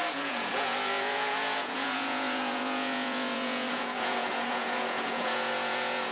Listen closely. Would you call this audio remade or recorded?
remade